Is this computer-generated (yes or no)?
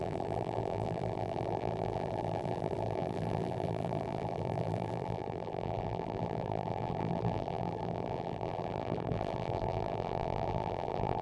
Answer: yes